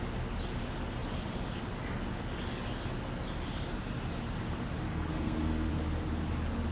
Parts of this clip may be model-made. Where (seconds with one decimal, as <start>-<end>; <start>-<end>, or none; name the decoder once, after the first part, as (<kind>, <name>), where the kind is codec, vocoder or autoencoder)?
4.9-5.7 (codec, SNAC)

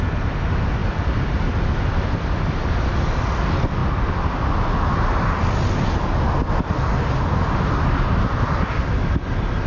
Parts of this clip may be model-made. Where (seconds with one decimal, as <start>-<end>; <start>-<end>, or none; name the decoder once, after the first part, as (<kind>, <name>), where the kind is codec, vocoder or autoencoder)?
0.8-3.4 (vocoder, BigVGAN v2)